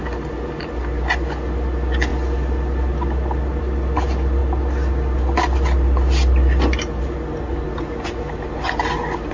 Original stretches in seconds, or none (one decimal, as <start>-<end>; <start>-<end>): 0.0-9.3